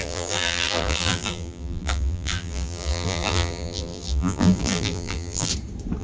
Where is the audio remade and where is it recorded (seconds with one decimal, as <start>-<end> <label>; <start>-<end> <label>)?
0.0-5.5 remade; 5.5-6.0 recorded